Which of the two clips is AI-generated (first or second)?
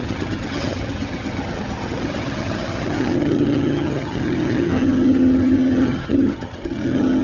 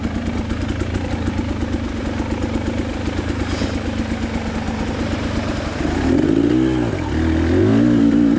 first